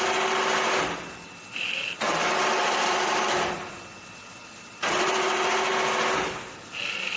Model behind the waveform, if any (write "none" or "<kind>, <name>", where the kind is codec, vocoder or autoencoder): none